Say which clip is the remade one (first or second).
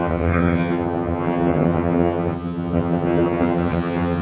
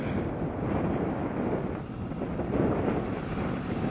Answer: first